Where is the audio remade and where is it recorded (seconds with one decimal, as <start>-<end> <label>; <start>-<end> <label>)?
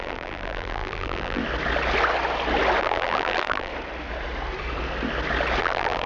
0.0-1.4 remade; 1.4-2.8 recorded; 2.8-3.7 remade; 3.7-5.6 recorded; 5.6-6.1 remade